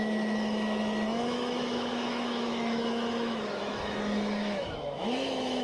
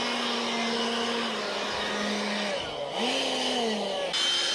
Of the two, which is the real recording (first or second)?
second